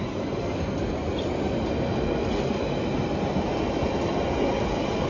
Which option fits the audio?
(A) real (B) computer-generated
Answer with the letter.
A